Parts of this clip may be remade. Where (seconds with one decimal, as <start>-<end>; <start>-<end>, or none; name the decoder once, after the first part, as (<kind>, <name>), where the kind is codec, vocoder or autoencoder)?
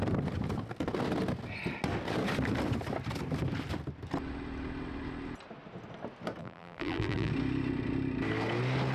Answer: 6.4-7.3 (vocoder, BigVGAN v2)